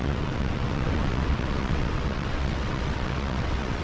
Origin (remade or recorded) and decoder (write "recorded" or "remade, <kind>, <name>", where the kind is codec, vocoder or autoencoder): remade, vocoder, WaveNeXt